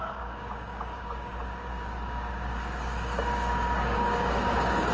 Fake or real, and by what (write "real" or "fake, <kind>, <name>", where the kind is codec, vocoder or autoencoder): fake, codec, DAC